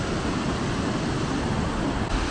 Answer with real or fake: real